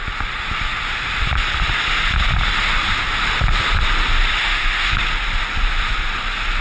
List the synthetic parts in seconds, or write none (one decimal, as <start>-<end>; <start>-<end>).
4.4-5.0

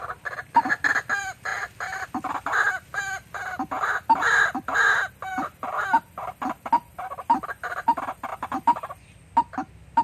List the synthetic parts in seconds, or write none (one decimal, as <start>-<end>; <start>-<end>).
none

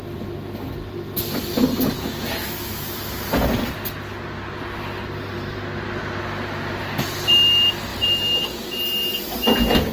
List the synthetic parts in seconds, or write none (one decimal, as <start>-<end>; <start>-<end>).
2.4-3.2

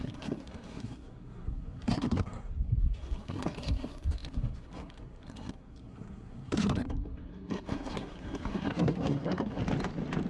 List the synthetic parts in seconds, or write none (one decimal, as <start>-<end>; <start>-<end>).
0.0-9.6

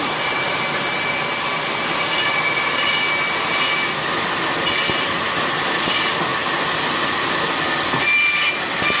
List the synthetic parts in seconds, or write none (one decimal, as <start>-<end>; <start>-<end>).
none

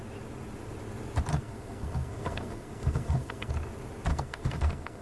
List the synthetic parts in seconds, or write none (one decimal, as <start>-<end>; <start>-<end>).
1.3-3.5; 4.1-5.0